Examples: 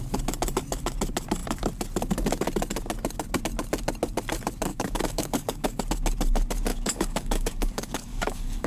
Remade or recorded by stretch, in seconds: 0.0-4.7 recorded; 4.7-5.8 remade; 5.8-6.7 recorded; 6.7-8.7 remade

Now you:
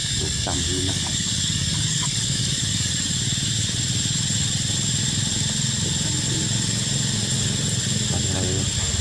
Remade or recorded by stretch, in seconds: 0.0-2.9 remade; 2.9-9.0 recorded

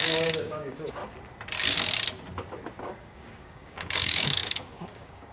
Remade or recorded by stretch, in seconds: 0.0-1.0 remade; 1.0-2.8 recorded; 2.8-5.3 remade